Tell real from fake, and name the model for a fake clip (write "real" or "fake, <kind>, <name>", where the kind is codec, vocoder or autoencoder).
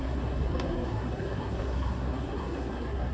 fake, codec, SNAC